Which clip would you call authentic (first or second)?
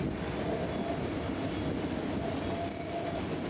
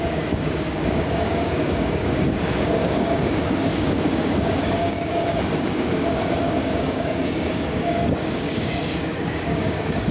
first